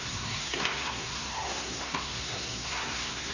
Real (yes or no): no